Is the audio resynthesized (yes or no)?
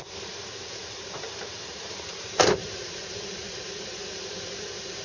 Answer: yes